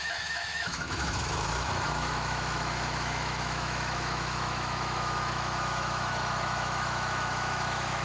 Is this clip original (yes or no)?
no